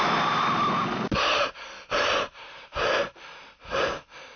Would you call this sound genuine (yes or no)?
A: yes